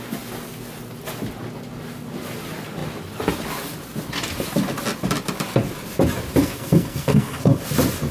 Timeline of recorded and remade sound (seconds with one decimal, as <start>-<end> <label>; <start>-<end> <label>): 0.0-6.4 recorded; 6.4-7.6 remade; 7.6-8.1 recorded